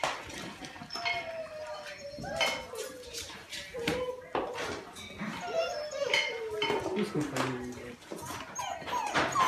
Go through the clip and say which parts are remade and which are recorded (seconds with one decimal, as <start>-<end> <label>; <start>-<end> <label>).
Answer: 0.0-3.1 recorded; 3.1-4.2 remade; 4.2-5.7 recorded; 5.7-6.4 remade; 6.4-9.5 recorded